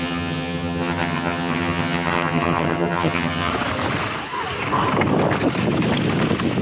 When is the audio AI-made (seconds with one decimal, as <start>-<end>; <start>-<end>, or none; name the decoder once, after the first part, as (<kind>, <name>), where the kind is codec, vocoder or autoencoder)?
0.0-3.5 (vocoder, HiFi-GAN)